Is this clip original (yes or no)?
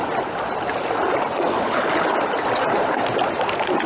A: yes